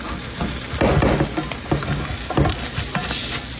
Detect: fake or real real